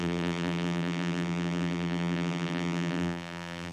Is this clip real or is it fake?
fake